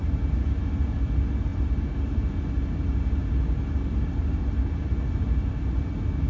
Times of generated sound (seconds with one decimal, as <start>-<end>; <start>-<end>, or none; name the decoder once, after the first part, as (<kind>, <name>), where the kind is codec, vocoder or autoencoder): none